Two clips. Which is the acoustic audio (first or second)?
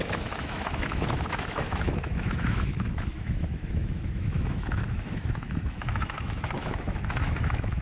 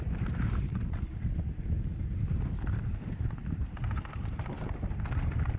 second